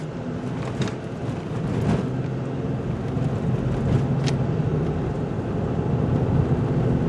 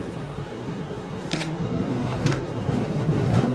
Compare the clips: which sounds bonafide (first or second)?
first